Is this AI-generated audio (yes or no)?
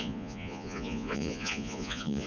yes